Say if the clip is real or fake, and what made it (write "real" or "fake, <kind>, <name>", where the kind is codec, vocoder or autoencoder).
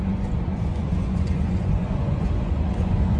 fake, vocoder, Vocos